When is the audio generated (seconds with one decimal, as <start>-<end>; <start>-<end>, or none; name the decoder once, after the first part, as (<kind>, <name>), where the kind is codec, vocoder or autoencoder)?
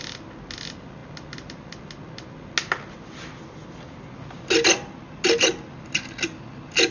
none